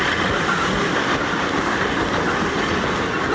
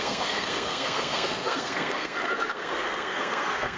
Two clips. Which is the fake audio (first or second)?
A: second